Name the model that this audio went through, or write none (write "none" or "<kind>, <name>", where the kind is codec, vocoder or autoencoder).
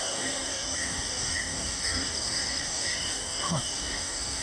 codec, DAC